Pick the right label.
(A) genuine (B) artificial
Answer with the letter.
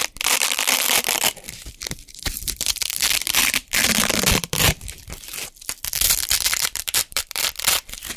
B